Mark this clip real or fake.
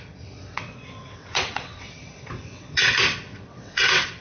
fake